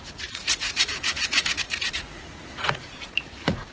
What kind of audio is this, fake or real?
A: fake